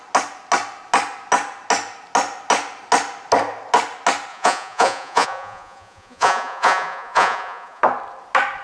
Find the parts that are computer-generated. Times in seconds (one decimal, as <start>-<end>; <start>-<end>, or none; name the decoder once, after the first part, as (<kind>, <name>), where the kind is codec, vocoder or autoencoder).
4.3-7.8 (vocoder, Vocos)